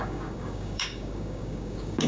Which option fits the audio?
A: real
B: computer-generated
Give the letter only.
B